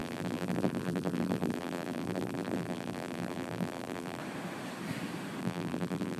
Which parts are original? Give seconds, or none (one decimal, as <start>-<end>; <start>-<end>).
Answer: 4.2-5.4